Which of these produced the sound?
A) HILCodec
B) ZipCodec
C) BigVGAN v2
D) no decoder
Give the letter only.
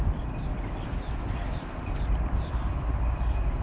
D